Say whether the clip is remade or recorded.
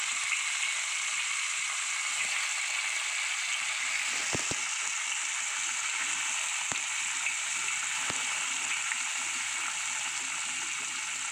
recorded